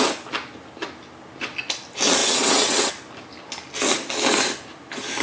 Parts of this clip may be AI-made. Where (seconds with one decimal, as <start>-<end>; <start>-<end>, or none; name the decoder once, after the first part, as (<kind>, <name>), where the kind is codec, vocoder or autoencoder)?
2.2-2.9 (vocoder, WaveNeXt)